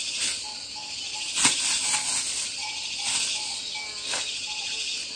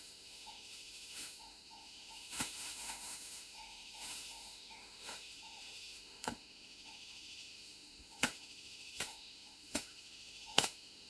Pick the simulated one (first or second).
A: second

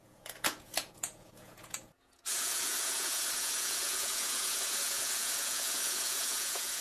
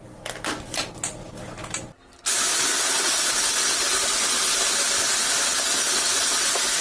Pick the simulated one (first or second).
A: first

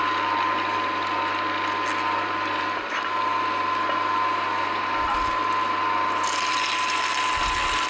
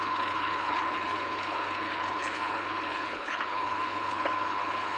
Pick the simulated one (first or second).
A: second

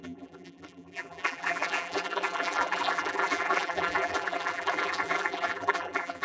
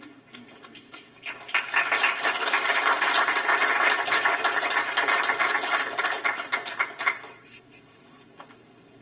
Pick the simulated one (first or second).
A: first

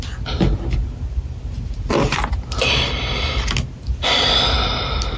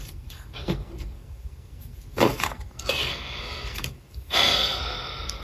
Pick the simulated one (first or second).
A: second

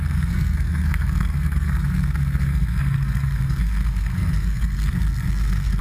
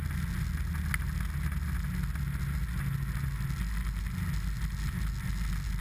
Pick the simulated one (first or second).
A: first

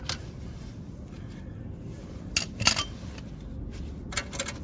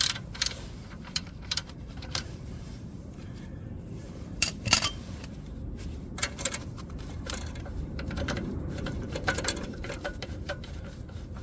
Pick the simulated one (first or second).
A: second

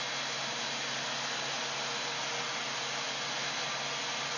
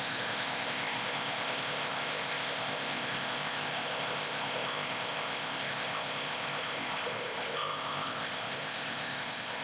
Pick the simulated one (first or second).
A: second